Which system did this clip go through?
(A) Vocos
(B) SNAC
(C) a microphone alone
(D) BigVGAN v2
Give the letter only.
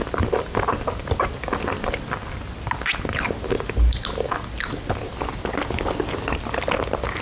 C